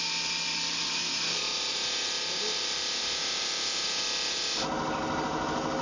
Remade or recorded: recorded